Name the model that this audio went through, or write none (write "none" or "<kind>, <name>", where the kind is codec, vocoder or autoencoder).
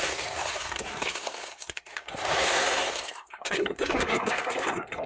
codec, SNAC